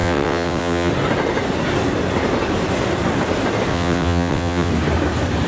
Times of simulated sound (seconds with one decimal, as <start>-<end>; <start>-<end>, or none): 0.0-0.9; 3.7-4.7

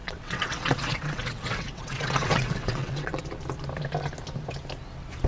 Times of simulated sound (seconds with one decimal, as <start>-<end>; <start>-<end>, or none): 0.0-3.2

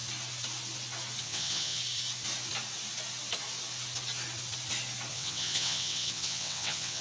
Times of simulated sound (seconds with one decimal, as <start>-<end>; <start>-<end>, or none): 1.2-1.8; 5.1-7.0

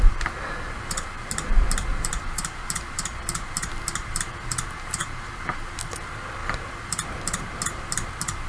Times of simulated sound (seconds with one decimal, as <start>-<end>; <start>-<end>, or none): none

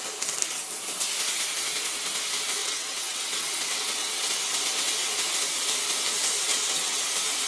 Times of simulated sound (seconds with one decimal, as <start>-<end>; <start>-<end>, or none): 2.6-4.4; 6.5-7.0

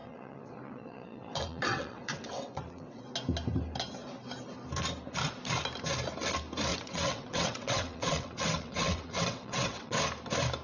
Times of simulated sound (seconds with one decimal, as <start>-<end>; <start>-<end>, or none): 0.0-3.0; 6.7-10.0

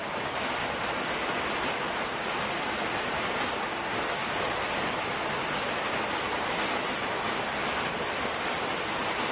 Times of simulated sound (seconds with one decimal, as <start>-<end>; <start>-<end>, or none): none